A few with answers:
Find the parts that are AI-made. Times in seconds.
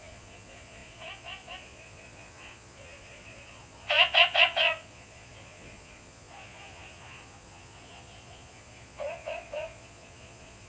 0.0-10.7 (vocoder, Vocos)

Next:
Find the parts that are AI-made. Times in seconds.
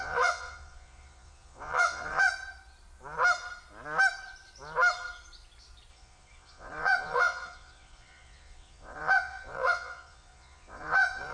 0.0-2.3 (vocoder, Vocos); 5.9-11.3